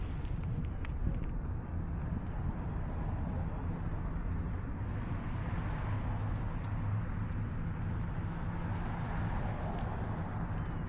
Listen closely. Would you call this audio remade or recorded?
recorded